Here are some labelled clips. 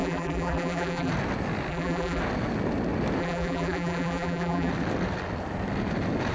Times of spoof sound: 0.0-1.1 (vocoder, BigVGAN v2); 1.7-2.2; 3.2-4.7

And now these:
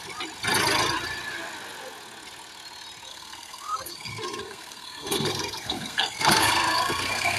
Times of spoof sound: 3.1-7.4 (codec, SNAC)